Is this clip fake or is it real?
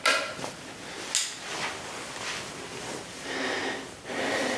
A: real